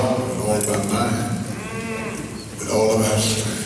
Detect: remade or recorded recorded